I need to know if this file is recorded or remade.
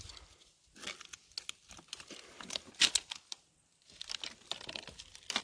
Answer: recorded